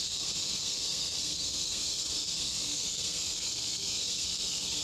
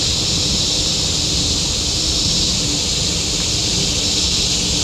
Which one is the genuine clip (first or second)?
second